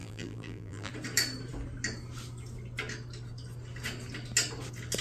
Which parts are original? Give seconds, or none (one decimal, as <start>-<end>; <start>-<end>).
0.9-5.0